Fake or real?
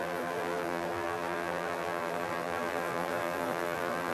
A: fake